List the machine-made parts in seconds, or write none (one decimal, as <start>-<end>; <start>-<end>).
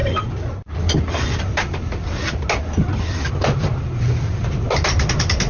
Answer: none